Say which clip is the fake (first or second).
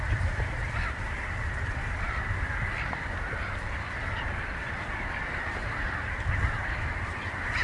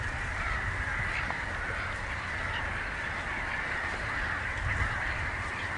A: first